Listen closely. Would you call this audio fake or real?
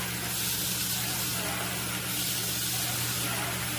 real